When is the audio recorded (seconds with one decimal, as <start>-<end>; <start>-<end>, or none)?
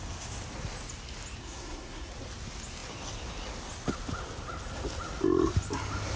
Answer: 0.0-1.4; 2.1-6.2